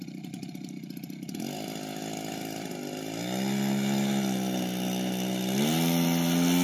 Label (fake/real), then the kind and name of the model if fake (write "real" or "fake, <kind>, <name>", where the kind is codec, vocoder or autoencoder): real